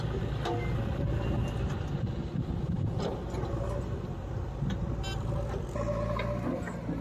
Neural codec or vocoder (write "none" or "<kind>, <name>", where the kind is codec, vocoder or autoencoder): none